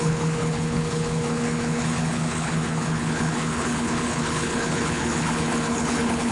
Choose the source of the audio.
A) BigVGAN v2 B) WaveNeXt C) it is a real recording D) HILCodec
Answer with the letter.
D